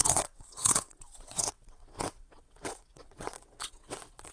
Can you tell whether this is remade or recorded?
remade